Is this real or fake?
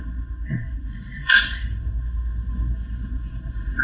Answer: fake